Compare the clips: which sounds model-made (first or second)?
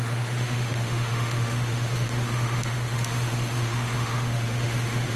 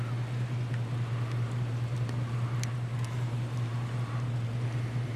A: first